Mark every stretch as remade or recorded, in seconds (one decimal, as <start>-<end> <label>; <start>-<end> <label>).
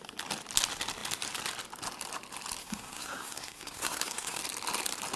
0.0-2.6 recorded; 2.6-4.4 remade; 4.4-5.2 recorded